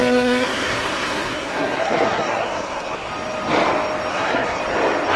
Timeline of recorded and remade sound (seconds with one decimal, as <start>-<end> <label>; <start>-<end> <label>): 0.0-3.1 remade; 3.1-4.1 recorded; 4.1-4.6 remade; 4.6-5.2 recorded